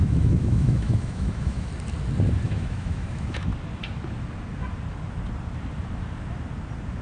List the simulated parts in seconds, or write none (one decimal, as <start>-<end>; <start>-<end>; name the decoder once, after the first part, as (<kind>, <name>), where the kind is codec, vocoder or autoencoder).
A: 0.0-1.7 (autoencoder, DAC-VAE); 2.4-3.5